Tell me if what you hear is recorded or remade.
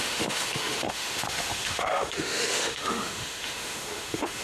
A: remade